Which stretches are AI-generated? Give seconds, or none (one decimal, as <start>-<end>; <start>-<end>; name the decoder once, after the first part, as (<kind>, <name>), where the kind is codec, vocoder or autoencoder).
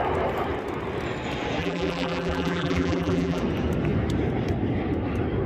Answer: 1.6-3.4 (vocoder, BigVGAN v2)